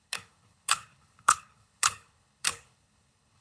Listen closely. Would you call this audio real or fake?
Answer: fake